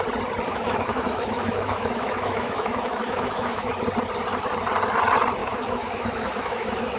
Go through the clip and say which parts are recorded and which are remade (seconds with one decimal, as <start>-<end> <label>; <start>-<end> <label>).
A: 0.0-0.5 recorded; 0.5-3.7 remade; 3.7-5.4 recorded; 5.4-7.0 remade